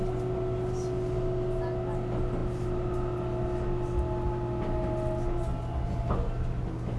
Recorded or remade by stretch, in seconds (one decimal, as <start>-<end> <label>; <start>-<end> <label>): 0.0-7.0 recorded